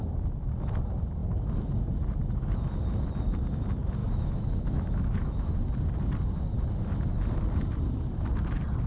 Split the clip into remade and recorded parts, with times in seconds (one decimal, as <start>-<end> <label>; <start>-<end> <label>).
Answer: 0.0-4.0 recorded; 4.0-5.5 remade; 5.5-8.9 recorded